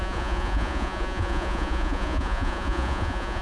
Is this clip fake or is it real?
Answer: fake